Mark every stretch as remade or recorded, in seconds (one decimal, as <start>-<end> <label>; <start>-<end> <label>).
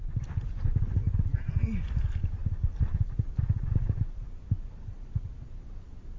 0.0-6.2 recorded